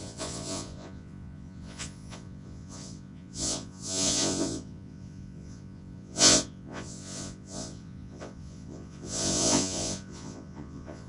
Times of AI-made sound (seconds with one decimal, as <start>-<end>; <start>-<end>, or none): 0.0-11.1